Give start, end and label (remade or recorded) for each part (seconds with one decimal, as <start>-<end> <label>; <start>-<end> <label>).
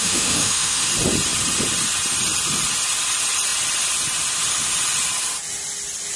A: 0.0-0.9 remade; 0.9-6.2 recorded